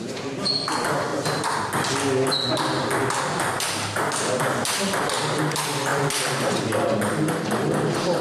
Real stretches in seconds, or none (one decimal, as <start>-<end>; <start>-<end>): 0.0-5.9; 7.5-8.2

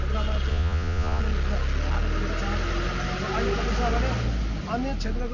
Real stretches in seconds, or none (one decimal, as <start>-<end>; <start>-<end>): 0.0-0.5; 1.2-5.3

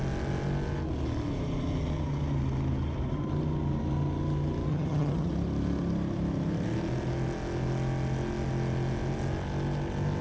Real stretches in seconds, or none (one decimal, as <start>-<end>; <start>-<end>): 0.0-4.7; 5.3-10.2

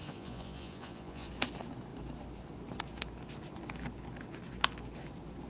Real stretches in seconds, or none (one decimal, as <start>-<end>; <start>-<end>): 1.3-5.5

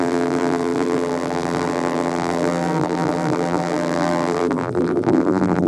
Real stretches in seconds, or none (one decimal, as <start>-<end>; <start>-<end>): none

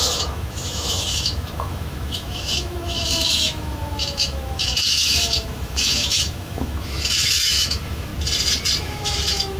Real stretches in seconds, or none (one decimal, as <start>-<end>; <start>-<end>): 8.1-8.8

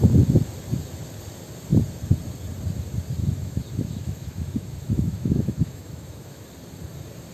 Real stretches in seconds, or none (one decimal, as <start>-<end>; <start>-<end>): 0.0-3.2; 6.4-7.3

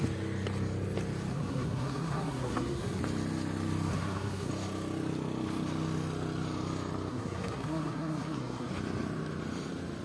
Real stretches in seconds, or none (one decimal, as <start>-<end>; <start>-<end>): 0.0-1.3; 3.0-3.9; 4.5-7.1; 8.7-10.0